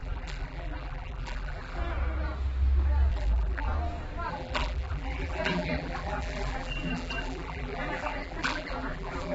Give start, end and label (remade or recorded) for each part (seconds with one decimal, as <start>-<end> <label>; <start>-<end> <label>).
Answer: 0.0-1.8 remade; 1.8-3.1 recorded; 3.1-3.7 remade; 3.7-4.3 recorded; 4.3-9.3 remade